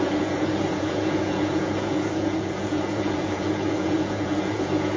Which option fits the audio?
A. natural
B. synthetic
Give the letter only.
B